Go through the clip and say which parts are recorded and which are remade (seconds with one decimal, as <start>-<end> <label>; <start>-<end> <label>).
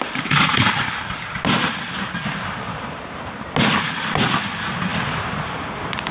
0.0-6.1 recorded